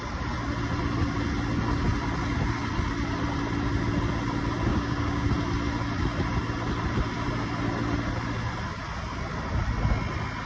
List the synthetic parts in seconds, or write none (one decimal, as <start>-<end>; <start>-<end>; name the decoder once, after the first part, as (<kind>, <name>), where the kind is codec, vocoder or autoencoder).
4.7-5.3 (codec, DAC)